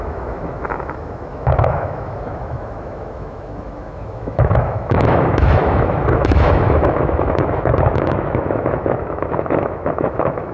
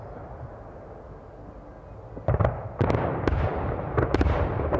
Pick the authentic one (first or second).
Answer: second